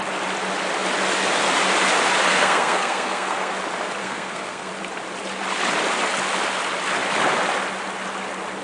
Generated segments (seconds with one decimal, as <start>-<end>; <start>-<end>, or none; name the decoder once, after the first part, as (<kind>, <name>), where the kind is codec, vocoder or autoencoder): 2.3-3.5 (codec, SNAC); 4.0-4.7